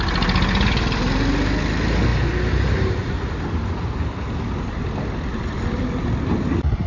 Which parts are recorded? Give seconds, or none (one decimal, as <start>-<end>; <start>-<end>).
0.0-5.3; 5.8-6.9